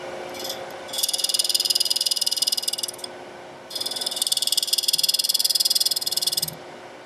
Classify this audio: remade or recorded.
recorded